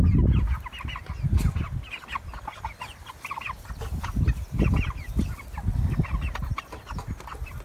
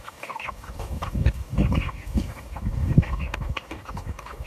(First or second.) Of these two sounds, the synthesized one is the second